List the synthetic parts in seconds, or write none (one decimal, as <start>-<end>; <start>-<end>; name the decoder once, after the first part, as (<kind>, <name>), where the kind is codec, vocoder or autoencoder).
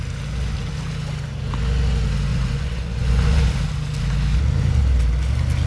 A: 2.3-3.3 (vocoder, Vocos)